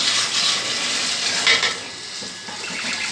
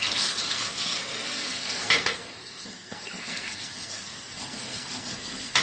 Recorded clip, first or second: first